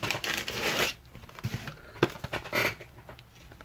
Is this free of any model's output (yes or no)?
yes